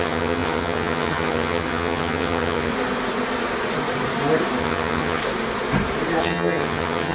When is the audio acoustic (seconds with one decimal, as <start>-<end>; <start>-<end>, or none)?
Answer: 2.7-4.6; 5.2-6.2